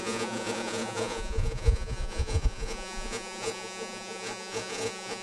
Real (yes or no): no